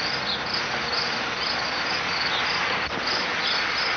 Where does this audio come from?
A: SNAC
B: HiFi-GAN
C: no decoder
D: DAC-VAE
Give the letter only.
C